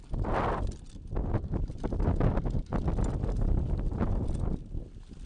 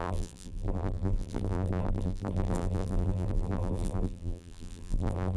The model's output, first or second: second